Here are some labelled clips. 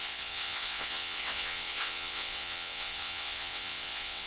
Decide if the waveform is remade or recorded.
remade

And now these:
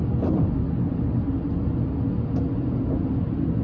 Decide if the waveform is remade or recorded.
recorded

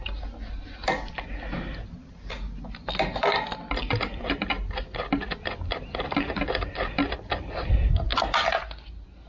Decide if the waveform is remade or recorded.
recorded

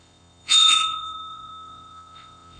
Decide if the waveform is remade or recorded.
remade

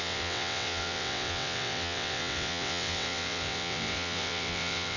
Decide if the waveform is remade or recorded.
remade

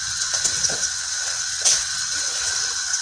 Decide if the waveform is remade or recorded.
remade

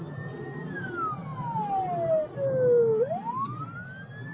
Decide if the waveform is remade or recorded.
recorded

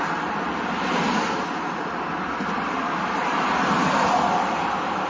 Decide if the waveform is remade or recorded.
recorded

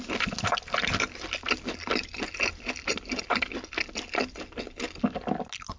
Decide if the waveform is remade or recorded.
recorded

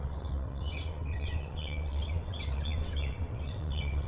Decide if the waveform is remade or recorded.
remade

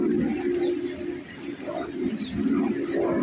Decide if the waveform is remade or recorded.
recorded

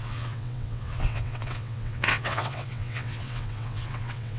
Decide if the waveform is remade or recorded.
remade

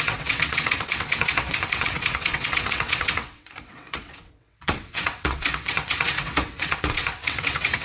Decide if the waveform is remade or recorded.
remade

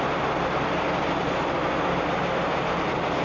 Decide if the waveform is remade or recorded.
recorded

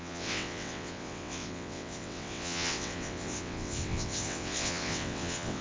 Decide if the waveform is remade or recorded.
remade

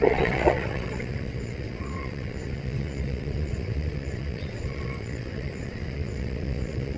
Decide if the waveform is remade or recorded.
remade